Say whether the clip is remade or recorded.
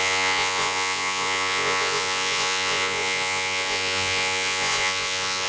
remade